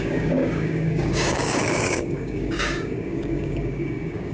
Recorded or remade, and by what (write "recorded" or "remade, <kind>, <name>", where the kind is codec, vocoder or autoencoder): remade, codec, DAC